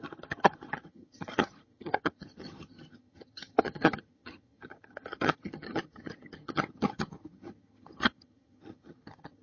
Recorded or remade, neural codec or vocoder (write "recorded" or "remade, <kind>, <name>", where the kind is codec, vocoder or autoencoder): remade, vocoder, HiFi-GAN